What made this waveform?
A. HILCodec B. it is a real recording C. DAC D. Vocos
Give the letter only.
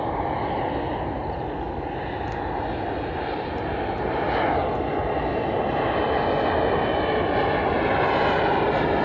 B